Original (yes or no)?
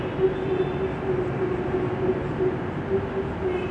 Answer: yes